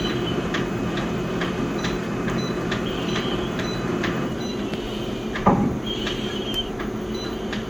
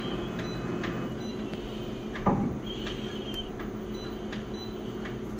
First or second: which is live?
second